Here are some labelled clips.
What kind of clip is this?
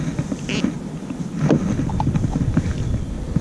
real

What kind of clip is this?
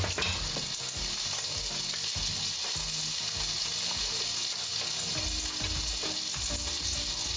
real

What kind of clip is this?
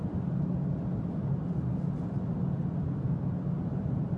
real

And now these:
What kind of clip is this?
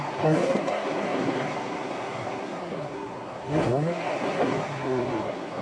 fake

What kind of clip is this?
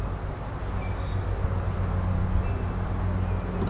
real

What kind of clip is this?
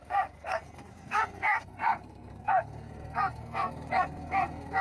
fake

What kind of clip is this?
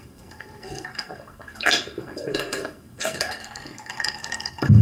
fake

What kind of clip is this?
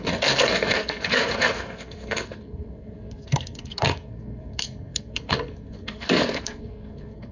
fake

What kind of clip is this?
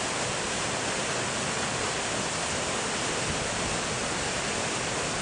real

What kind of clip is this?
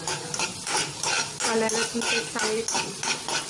real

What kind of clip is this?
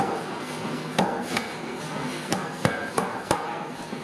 fake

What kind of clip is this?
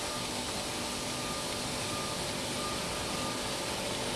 real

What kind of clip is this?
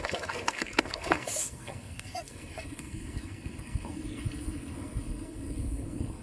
fake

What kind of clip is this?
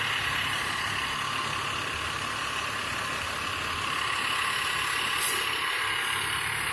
real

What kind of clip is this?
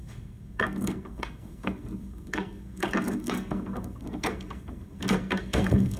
fake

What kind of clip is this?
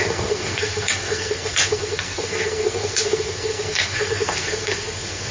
fake